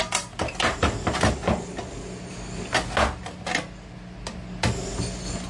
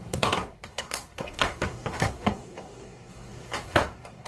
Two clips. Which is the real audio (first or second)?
first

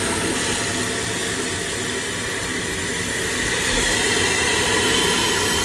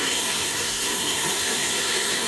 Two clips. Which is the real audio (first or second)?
first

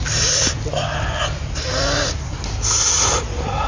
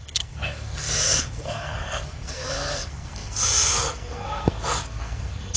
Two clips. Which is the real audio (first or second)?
first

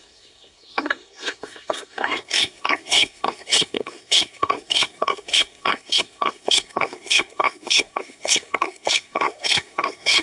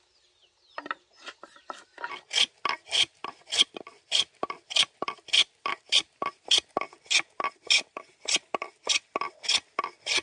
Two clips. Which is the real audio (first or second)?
second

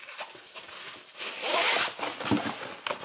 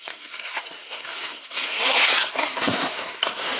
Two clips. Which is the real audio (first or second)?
first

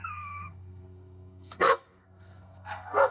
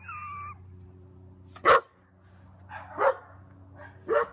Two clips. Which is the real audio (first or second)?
second